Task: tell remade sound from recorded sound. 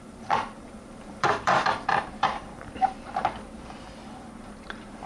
remade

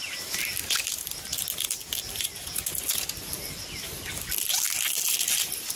recorded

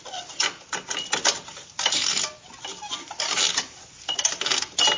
recorded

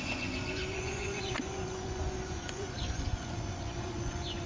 remade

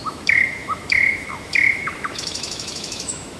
remade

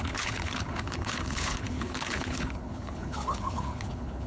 remade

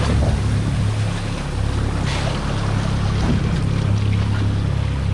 recorded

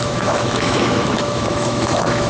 remade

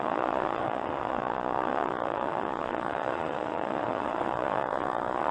remade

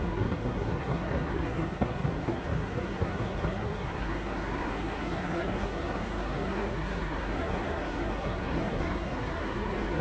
remade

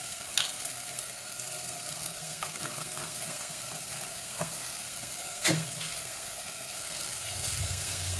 remade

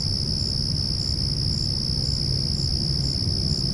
recorded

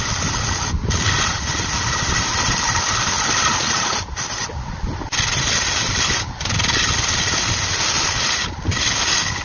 recorded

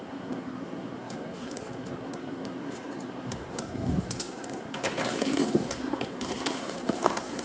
remade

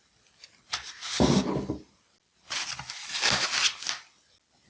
recorded